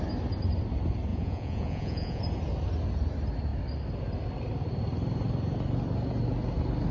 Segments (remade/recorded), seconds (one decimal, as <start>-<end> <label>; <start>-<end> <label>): 0.0-1.1 recorded; 1.1-2.2 remade; 2.2-6.9 recorded